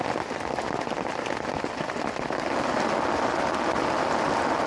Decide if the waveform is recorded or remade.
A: recorded